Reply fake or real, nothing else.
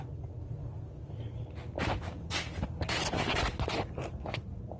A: real